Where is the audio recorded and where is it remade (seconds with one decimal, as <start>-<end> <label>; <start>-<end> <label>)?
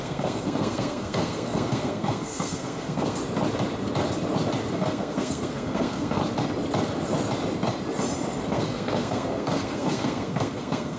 0.0-3.2 remade; 3.2-4.7 recorded; 4.7-6.2 remade; 6.2-8.5 recorded; 8.5-11.0 remade